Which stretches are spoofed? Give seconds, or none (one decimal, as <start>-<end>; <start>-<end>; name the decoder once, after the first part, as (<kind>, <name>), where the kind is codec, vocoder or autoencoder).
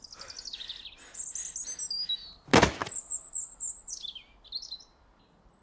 none